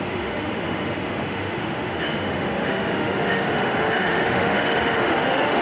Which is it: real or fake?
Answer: fake